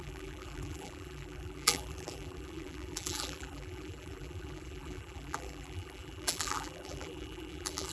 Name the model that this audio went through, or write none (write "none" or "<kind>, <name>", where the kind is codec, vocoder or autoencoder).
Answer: vocoder, BigVGAN v2